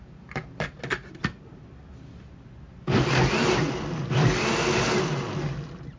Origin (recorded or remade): recorded